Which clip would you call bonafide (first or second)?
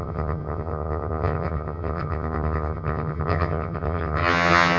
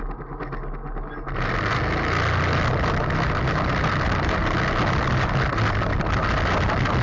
second